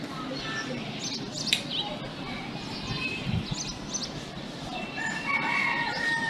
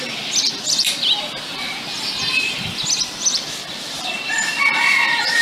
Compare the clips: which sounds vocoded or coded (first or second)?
second